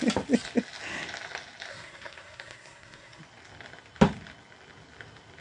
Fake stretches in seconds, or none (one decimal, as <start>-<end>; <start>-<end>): 1.7-3.2

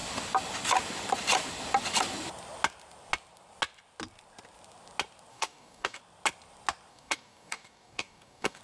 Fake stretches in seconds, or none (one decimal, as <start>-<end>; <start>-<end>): 5.3-6.0; 6.9-8.6

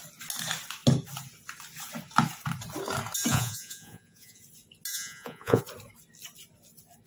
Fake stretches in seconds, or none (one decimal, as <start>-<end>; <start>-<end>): 3.3-4.4; 4.9-5.6

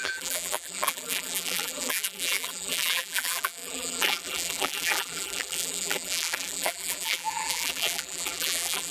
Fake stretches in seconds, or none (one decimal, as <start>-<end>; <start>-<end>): 0.0-8.9

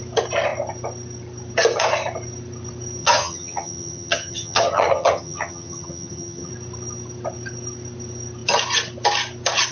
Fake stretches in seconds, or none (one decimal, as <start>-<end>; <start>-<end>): 3.0-6.5

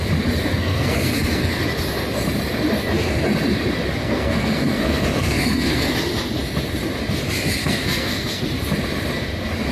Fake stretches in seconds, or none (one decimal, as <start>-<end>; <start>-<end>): 0.5-1.6; 4.0-5.9; 7.6-8.4

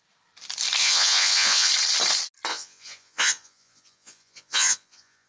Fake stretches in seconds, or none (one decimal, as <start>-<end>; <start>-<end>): 0.8-1.7; 2.5-5.3